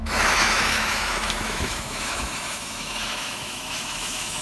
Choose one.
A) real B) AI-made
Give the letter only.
B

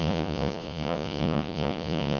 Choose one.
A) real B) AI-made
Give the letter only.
B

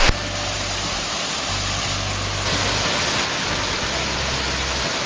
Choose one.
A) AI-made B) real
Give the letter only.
B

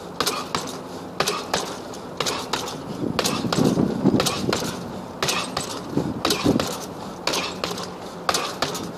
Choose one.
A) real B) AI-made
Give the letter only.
A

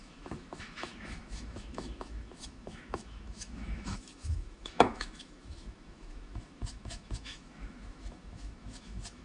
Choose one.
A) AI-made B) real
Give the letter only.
A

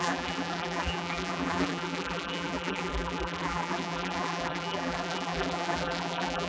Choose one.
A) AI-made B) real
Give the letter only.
A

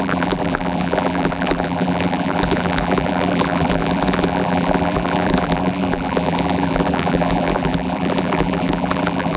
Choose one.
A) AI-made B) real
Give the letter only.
A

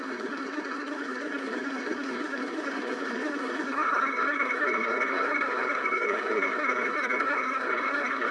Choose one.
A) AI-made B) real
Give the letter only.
A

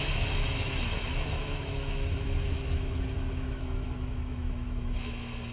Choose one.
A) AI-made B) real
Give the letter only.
A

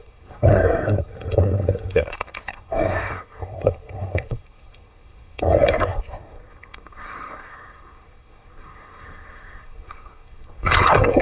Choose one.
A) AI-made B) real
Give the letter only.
A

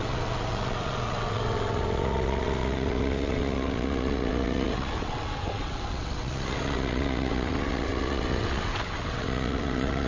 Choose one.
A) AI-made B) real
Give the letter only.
A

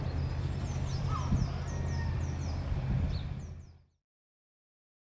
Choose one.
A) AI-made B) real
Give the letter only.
B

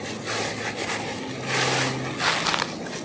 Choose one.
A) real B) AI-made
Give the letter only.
A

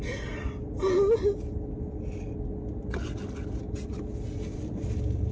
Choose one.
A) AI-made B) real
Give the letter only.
B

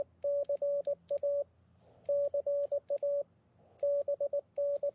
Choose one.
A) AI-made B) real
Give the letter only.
B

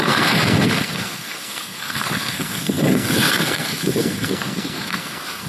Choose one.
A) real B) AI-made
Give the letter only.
B